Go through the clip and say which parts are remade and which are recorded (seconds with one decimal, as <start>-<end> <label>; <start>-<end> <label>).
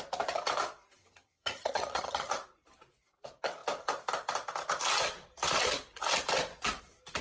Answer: 0.0-1.0 recorded; 1.0-2.3 remade; 2.3-7.2 recorded